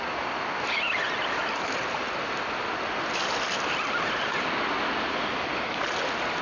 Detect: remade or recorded recorded